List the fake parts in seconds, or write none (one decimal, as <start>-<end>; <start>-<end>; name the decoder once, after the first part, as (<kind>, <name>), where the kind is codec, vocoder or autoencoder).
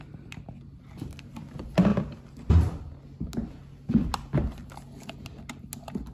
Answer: none